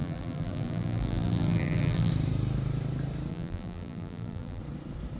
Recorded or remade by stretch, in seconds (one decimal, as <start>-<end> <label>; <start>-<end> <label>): 0.0-2.1 remade; 2.1-3.3 recorded; 3.3-4.6 remade; 4.6-5.2 recorded